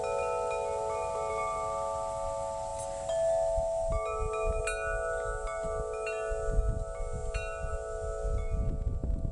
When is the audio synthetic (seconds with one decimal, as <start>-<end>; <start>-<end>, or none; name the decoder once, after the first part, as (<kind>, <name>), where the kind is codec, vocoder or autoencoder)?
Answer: none